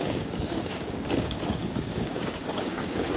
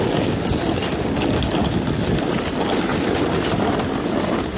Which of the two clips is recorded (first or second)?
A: second